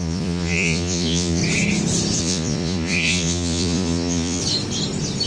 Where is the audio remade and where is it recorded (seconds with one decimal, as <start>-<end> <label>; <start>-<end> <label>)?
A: 0.0-1.4 remade; 1.4-2.2 recorded; 2.2-4.4 remade; 4.4-5.3 recorded